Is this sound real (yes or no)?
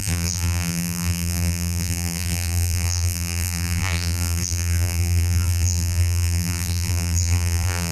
no